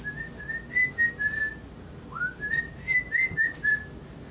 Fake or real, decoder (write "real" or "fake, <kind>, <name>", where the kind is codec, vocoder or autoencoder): real